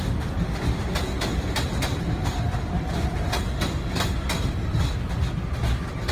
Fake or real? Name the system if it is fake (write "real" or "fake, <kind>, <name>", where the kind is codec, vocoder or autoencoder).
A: real